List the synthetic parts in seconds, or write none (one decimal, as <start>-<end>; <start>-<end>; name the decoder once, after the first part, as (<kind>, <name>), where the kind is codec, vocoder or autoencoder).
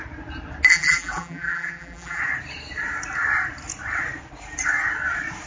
0.7-2.2 (vocoder, BigVGAN v2)